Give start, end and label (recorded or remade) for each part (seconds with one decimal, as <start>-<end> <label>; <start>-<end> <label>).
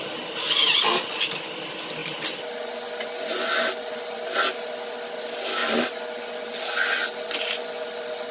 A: 0.0-8.3 recorded